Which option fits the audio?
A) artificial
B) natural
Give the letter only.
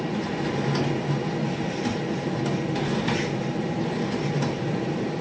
B